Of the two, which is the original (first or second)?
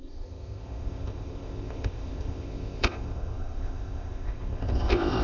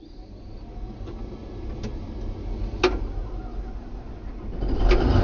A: second